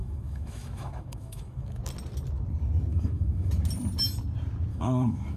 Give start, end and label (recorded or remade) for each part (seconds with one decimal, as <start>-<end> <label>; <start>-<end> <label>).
0.0-1.8 remade; 1.8-2.9 recorded; 2.9-3.5 remade; 3.5-4.7 recorded; 4.7-5.4 remade